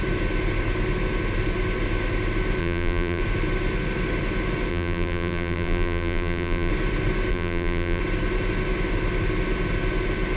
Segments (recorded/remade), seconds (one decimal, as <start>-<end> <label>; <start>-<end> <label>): 0.0-2.6 recorded; 2.6-3.2 remade; 3.2-4.7 recorded; 4.7-6.7 remade; 6.7-7.3 recorded; 7.3-8.0 remade; 8.0-10.4 recorded